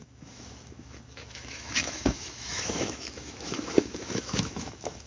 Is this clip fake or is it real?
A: fake